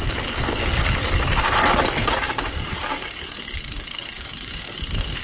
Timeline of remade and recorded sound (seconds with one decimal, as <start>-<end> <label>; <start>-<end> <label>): 0.0-2.0 recorded; 2.0-5.2 remade